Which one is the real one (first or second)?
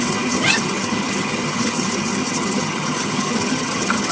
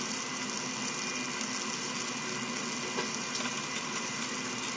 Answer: second